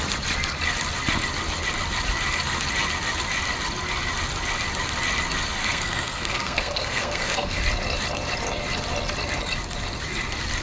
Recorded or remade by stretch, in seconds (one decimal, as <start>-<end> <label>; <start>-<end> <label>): 0.0-5.6 recorded; 5.6-7.6 remade; 7.6-10.6 recorded